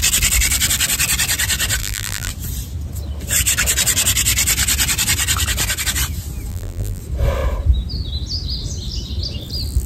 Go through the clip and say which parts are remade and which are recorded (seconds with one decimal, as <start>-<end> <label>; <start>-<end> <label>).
0.0-1.8 recorded; 1.8-2.3 remade; 2.3-6.5 recorded; 6.5-7.0 remade; 7.0-9.9 recorded